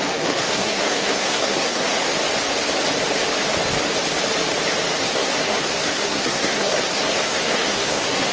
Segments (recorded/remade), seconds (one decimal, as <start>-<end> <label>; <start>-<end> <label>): 0.0-2.0 remade; 2.0-5.0 recorded; 5.0-8.3 remade